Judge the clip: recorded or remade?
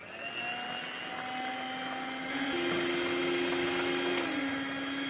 recorded